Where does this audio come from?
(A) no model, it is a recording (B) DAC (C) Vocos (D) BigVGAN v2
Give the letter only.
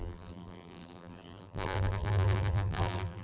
D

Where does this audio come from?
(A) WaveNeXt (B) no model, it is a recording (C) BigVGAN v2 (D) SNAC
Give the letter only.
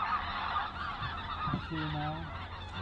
B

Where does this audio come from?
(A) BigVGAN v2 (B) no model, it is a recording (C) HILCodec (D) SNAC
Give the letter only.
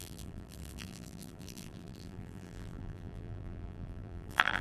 A